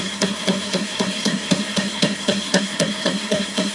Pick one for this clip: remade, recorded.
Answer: remade